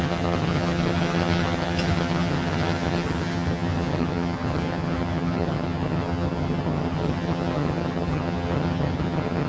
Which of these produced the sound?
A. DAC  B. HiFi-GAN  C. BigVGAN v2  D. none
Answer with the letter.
B